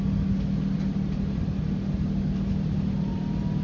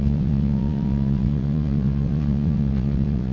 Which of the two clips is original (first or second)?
first